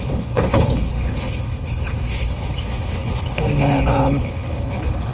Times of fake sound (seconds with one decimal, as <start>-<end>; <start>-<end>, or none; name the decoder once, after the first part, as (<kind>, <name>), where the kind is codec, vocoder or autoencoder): 0.0-5.1 (codec, HILCodec)

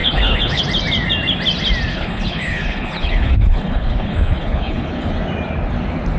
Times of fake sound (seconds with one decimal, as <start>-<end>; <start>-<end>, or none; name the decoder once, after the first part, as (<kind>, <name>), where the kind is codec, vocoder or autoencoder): 0.0-0.6 (codec, HILCodec); 1.9-5.1

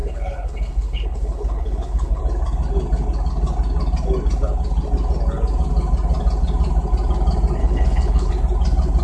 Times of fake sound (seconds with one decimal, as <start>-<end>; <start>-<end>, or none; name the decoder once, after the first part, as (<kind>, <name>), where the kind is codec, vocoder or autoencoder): 0.0-2.2 (codec, HILCodec); 7.6-8.3